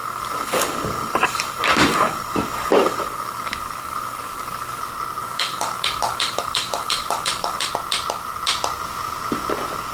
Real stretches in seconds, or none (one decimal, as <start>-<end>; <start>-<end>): 4.8-5.2; 7.7-9.9